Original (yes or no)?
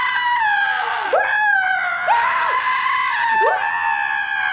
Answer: yes